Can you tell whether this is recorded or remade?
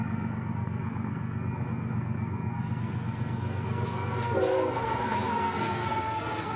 remade